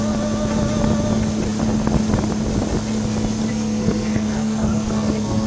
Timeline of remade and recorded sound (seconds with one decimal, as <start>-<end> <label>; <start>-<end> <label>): 0.0-3.5 recorded; 3.5-5.5 remade